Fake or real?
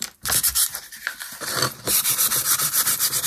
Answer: fake